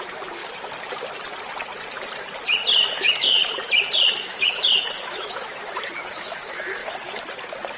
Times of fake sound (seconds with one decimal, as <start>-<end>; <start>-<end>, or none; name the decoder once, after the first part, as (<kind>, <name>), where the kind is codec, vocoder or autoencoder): 0.0-0.4 (autoencoder, DAC-VAE); 3.0-3.4; 4.2-6.8